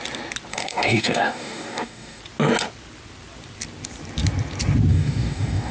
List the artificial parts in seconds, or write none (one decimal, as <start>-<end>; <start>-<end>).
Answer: 0.5-2.2; 4.9-5.7